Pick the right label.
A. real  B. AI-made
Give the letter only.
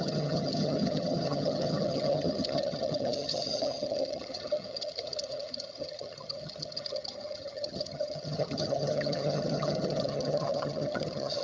B